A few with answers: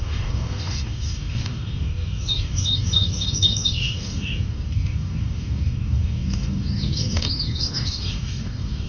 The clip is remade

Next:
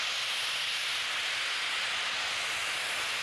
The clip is recorded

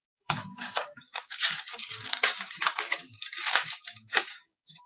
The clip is remade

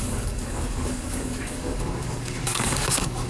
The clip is remade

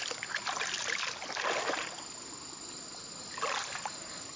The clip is recorded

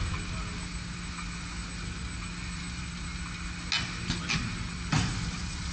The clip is recorded